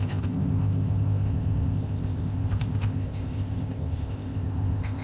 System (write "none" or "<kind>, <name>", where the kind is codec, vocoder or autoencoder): codec, ZipCodec